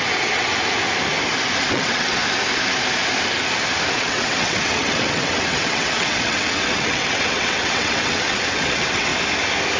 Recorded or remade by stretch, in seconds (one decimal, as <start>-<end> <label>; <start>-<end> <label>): 0.0-0.5 remade; 0.5-1.7 recorded; 1.7-2.2 remade; 2.2-4.0 recorded; 4.0-9.1 remade; 9.1-9.8 recorded